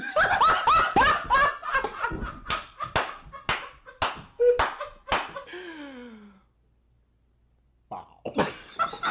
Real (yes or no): yes